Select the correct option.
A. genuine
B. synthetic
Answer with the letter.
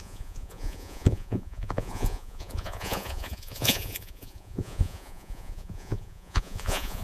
B